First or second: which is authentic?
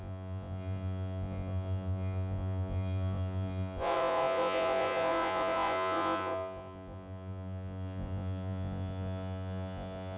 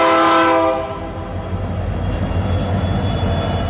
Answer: second